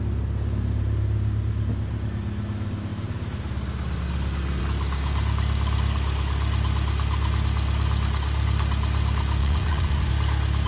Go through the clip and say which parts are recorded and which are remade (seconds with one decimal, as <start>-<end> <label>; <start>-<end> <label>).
0.0-9.4 recorded; 9.4-10.1 remade; 10.1-10.7 recorded